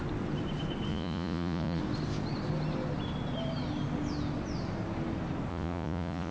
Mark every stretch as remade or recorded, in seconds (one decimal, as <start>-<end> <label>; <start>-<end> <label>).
0.0-0.9 recorded; 0.9-1.8 remade; 1.8-5.5 recorded; 5.5-6.3 remade